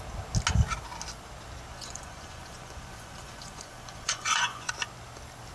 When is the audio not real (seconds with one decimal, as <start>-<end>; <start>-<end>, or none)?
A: 1.7-4.7